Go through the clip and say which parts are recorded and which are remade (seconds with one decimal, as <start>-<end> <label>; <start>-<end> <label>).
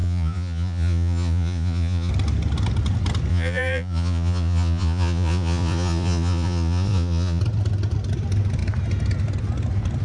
0.0-2.1 remade; 2.1-3.3 recorded; 3.3-7.4 remade; 7.4-10.0 recorded